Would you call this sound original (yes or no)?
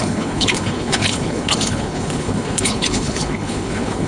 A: no